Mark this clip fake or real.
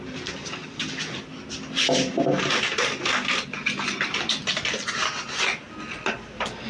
real